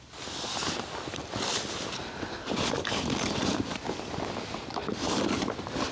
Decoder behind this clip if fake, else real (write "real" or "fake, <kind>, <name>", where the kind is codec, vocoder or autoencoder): real